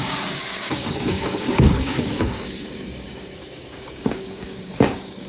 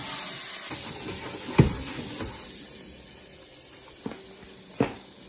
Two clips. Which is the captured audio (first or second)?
second